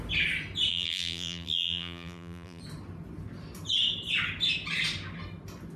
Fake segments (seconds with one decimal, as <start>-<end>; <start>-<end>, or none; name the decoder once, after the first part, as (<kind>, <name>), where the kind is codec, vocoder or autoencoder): 0.7-2.6 (vocoder, BigVGAN v2)